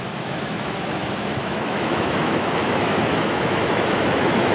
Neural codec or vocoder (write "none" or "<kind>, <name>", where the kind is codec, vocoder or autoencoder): autoencoder, DAC-VAE